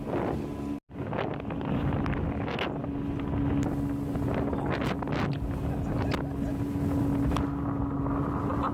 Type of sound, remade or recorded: recorded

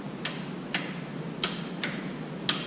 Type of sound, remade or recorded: recorded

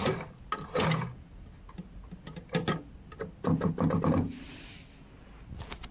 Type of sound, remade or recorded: recorded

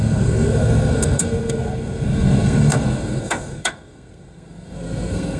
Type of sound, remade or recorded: remade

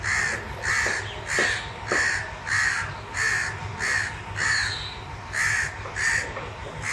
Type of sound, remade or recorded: recorded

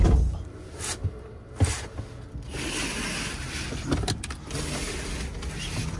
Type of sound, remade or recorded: recorded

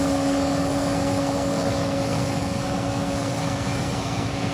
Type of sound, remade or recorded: remade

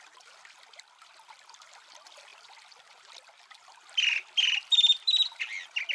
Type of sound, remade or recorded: recorded